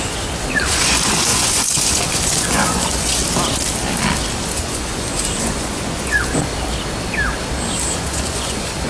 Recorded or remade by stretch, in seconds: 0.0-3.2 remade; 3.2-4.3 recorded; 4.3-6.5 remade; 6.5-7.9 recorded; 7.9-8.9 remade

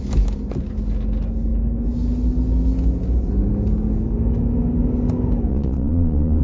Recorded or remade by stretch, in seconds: 0.0-5.5 recorded; 5.5-6.4 remade

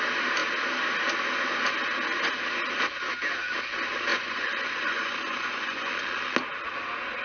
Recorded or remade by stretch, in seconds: 0.0-4.1 recorded; 4.1-5.9 remade; 5.9-7.2 recorded